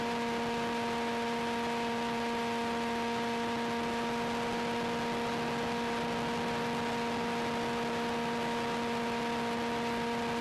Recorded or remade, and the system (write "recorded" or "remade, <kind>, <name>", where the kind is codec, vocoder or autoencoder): recorded